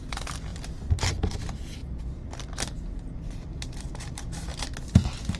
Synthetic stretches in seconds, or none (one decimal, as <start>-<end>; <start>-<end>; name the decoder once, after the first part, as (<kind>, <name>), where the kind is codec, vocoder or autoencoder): 0.0-1.8 (vocoder, BigVGAN v2); 3.2-4.5